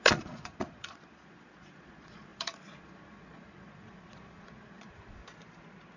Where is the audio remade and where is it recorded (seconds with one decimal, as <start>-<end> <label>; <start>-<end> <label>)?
0.0-5.2 remade; 5.2-6.0 recorded